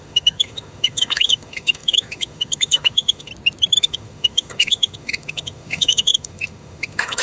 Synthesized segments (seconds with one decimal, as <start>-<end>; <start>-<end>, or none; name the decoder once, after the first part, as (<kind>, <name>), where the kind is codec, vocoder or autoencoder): 0.0-3.3 (autoencoder, DAC-VAE); 3.8-7.2